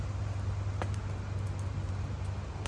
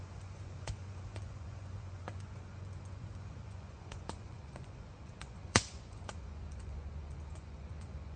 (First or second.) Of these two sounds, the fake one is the second